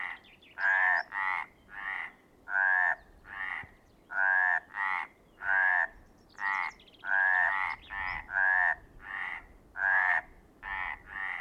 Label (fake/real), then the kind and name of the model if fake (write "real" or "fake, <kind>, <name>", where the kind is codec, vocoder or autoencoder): real